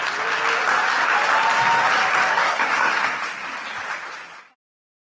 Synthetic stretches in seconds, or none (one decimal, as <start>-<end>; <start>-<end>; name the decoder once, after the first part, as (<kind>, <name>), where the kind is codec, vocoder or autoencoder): 2.3-3.2 (codec, SNAC)